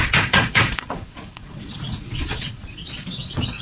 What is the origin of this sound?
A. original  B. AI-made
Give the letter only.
B